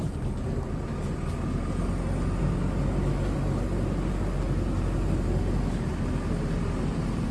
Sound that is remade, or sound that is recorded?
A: recorded